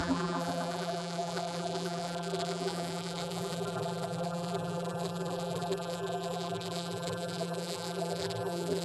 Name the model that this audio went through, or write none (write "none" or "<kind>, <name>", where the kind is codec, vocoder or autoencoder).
vocoder, BigVGAN v2